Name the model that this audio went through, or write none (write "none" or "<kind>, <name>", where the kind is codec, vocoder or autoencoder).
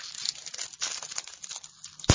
none